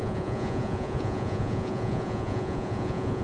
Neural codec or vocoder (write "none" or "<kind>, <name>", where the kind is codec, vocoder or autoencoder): vocoder, Vocos